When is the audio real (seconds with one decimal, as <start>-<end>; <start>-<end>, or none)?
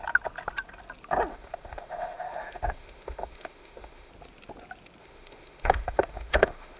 0.0-1.3; 4.1-5.0